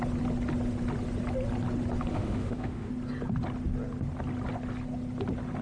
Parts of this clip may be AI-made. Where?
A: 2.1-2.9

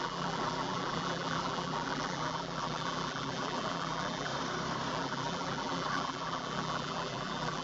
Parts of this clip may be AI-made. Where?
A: 0.0-4.3; 4.9-7.6

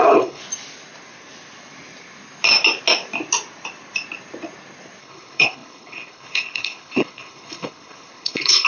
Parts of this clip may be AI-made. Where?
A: 0.0-0.4; 5.0-8.7

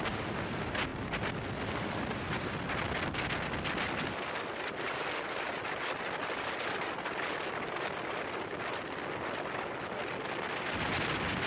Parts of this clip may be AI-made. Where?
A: none

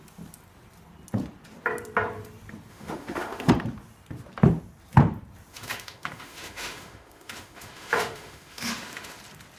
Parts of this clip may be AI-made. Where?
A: 2.7-3.5; 5.5-9.2

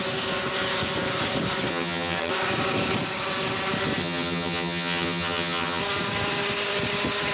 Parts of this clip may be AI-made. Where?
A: 1.7-2.3; 4.0-5.8

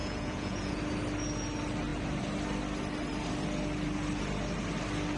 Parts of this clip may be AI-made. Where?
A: 0.0-0.8